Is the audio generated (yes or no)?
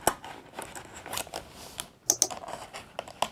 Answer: no